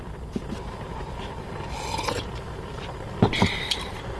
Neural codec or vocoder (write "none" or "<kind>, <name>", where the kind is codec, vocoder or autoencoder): none